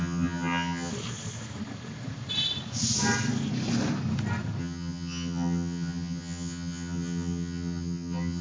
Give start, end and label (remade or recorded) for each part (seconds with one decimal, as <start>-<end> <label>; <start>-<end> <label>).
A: 0.0-0.9 remade; 0.9-4.6 recorded; 4.6-8.4 remade